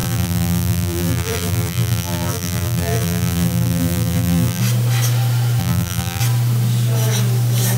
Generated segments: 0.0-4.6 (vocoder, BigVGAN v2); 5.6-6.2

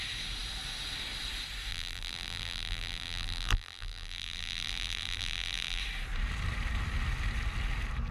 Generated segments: 1.7-5.8 (vocoder, BigVGAN v2)

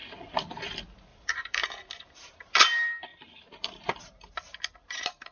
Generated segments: 1.1-2.5 (vocoder, BigVGAN v2); 3.1-4.3

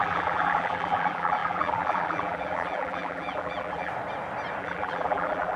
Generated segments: 0.0-3.9 (vocoder, BigVGAN v2); 4.6-5.6

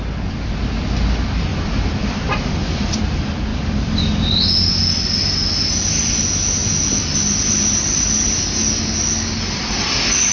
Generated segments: 1.5-3.0 (vocoder, BigVGAN v2)